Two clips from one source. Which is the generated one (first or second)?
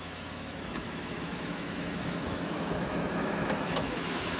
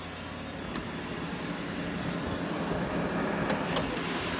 first